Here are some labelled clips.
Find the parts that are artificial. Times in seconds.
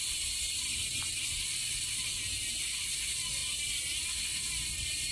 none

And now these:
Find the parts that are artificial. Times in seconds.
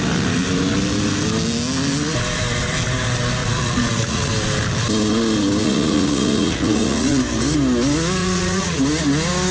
3.4-4.3 (vocoder, Vocos); 5.6-7.2; 8.2-8.8